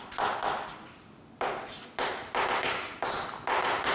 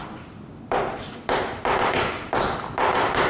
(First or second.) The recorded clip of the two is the first